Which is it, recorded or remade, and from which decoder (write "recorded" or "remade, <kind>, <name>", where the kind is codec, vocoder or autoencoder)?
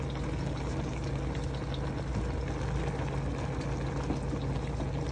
recorded